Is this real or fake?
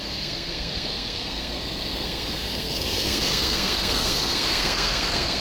fake